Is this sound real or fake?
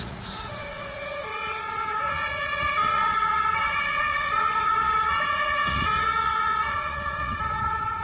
fake